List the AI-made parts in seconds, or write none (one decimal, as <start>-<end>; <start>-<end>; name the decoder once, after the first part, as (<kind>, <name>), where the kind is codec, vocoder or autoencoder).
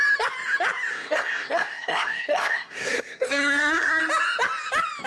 0.9-4.0 (codec, SNAC)